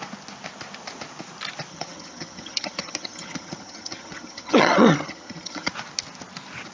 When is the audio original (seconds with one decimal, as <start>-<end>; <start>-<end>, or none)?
0.0-1.7; 5.7-6.7